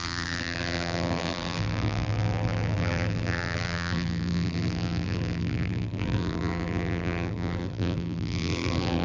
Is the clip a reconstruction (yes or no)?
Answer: yes